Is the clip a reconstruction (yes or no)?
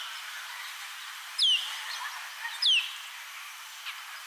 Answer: no